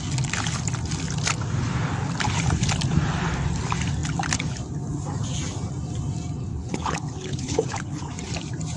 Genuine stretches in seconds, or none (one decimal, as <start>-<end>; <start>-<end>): 0.0-6.5; 8.1-8.8